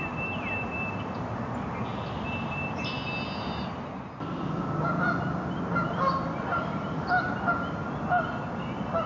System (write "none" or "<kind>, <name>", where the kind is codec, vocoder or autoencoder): none